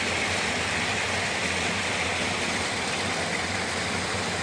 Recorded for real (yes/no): yes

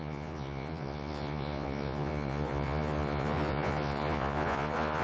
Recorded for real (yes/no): no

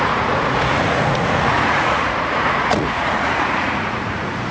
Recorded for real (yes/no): no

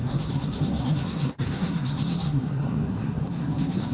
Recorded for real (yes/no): no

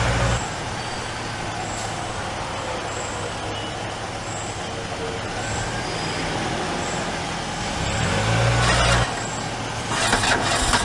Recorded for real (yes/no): yes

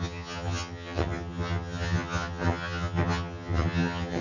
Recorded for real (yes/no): no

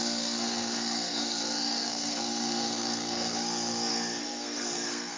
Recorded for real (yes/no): no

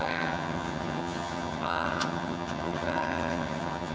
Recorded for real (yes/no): no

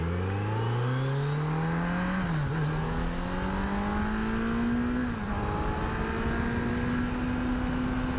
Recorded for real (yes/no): yes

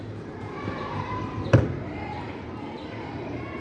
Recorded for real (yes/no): no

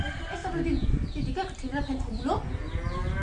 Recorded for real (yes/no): yes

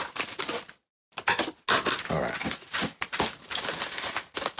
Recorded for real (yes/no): yes